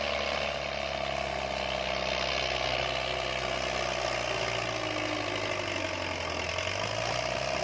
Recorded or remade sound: recorded